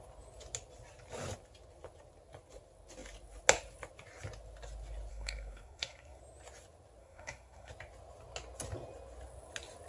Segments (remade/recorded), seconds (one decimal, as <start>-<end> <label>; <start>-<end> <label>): 0.0-5.1 recorded; 5.1-6.2 remade; 6.2-7.0 recorded; 7.0-7.7 remade; 7.7-9.9 recorded